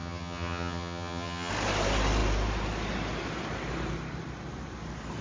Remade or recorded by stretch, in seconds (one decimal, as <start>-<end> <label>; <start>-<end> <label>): 0.0-1.5 remade; 1.5-5.2 recorded